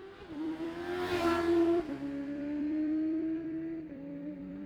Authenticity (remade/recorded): remade